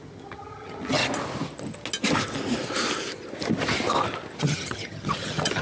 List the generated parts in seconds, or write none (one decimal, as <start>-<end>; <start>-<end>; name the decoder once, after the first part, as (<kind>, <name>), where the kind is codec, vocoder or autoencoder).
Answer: 0.0-1.0 (vocoder, HiFi-GAN); 4.4-5.6